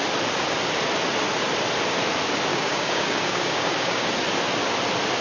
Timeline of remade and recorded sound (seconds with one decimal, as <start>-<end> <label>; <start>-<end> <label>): 0.0-2.5 recorded; 2.5-4.1 remade; 4.1-5.2 recorded